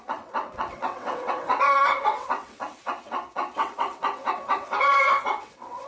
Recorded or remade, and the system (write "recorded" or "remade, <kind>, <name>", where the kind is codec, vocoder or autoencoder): remade, vocoder, WaveNeXt